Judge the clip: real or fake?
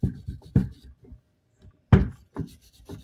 real